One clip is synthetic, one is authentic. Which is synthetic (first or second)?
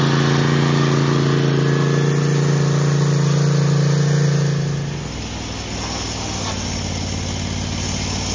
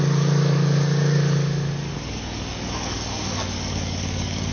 second